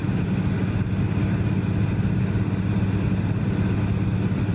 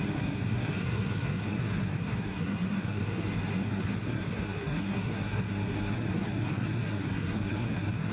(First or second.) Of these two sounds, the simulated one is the second